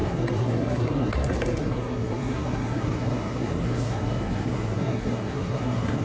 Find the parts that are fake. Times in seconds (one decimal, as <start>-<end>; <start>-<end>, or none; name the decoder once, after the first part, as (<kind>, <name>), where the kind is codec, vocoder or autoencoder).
0.0-6.0 (codec, SNAC)

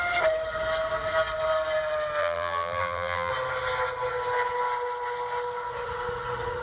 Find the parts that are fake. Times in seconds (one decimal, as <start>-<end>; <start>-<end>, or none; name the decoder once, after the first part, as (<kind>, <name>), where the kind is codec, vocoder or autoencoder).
2.2-3.3 (vocoder, BigVGAN v2)